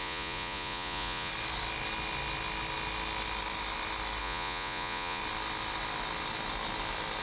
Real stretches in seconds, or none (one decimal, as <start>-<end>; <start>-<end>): 1.3-4.2; 5.2-7.2